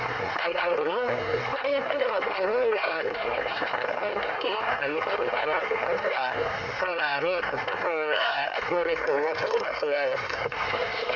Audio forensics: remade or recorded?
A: remade